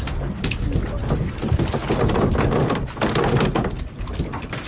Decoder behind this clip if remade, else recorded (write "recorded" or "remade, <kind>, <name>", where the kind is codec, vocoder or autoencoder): recorded